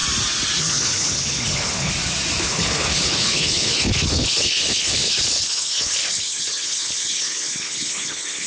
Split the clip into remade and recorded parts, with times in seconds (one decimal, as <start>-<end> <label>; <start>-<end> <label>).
0.0-0.6 recorded; 0.6-1.9 remade; 1.9-2.4 recorded; 2.4-8.5 remade